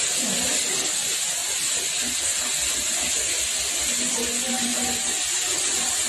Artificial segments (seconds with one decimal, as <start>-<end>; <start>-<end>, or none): none

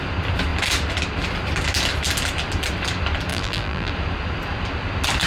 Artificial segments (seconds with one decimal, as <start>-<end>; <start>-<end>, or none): 3.3-3.9

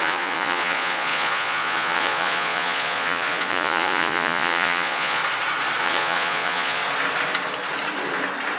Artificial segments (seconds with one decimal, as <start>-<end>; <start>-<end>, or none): 0.0-5.2; 5.8-6.8

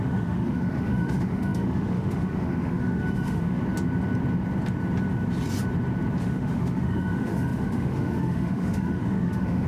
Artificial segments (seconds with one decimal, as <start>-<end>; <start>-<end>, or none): 0.0-3.6; 6.2-9.7

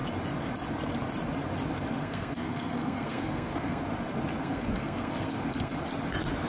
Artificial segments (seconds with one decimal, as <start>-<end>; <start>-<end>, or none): 2.0-3.8; 4.4-5.7

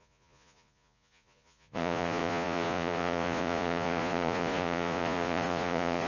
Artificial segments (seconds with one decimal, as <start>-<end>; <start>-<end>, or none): 0.0-6.1

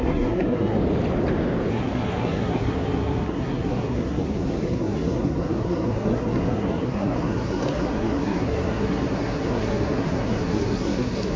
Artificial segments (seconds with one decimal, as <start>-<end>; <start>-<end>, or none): 0.0-0.8; 1.7-11.4

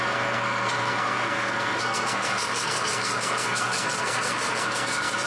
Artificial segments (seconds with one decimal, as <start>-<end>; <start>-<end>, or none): 0.0-5.3